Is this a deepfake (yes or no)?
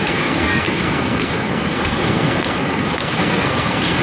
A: yes